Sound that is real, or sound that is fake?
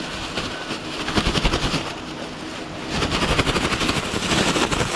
real